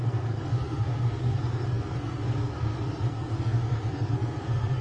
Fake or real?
fake